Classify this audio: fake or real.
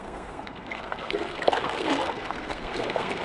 fake